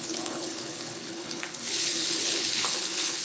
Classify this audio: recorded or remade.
remade